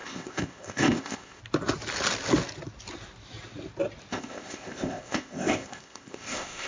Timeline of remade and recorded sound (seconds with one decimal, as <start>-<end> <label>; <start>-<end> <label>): 0.0-1.4 remade; 1.4-4.1 recorded; 4.1-6.7 remade